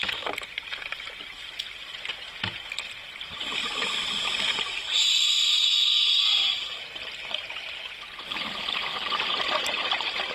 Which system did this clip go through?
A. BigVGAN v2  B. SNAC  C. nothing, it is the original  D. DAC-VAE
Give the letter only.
C